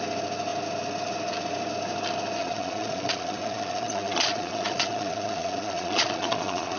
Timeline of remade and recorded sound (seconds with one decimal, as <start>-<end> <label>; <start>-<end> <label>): 0.0-2.4 recorded; 2.4-6.8 remade